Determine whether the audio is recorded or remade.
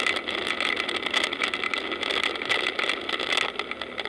recorded